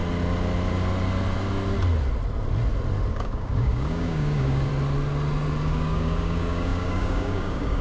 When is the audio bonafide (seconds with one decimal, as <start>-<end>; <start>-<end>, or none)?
0.0-3.1; 4.7-5.6